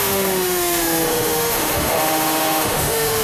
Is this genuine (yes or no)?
no